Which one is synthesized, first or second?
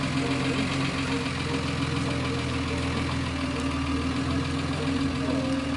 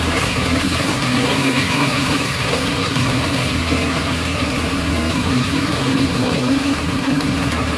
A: second